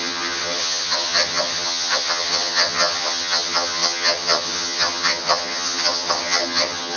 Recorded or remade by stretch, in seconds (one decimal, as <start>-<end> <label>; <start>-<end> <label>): 0.0-7.0 remade